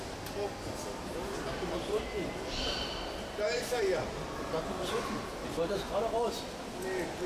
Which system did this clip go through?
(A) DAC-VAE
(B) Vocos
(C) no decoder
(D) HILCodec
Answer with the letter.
C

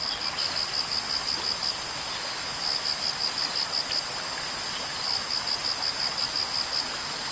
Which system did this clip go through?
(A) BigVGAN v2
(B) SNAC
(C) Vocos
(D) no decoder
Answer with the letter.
D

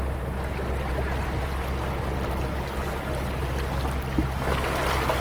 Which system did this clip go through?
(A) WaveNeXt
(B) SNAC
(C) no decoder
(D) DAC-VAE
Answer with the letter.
C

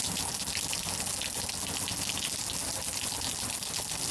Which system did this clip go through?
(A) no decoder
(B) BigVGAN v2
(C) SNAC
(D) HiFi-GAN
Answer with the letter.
A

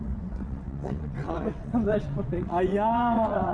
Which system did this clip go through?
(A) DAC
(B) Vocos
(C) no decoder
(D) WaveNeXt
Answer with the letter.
D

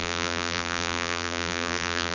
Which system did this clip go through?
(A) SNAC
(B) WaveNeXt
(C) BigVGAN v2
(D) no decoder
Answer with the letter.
C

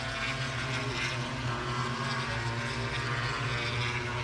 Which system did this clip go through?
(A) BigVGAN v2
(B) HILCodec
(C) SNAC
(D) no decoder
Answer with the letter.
D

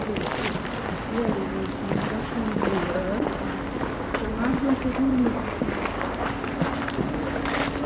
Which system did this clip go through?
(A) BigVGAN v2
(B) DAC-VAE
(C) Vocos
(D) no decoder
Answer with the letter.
D